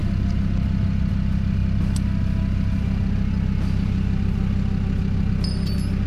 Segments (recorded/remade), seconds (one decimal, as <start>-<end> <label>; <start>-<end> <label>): 0.0-6.1 recorded